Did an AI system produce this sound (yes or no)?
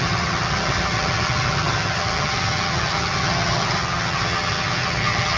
yes